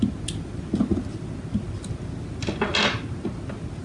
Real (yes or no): yes